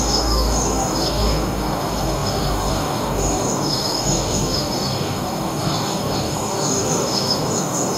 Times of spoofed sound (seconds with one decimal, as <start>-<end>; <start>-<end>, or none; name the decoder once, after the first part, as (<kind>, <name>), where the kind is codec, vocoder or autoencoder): 0.0-8.0 (codec, DAC)